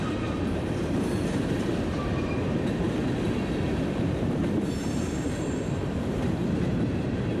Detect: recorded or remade remade